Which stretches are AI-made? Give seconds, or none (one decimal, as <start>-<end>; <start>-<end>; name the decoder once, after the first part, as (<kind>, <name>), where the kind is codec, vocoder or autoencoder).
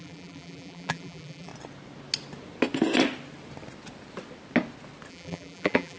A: 0.0-1.5 (vocoder, BigVGAN v2); 5.1-6.0